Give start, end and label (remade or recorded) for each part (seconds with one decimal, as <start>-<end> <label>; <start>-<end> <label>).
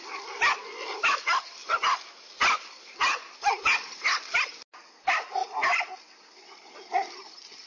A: 0.0-7.7 recorded